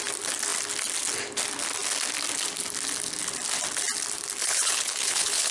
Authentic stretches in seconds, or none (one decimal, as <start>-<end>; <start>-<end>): 0.0-4.4